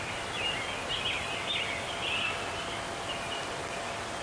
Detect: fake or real real